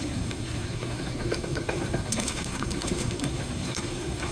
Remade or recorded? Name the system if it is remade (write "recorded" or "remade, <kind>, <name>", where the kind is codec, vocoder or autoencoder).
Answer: remade, codec, SNAC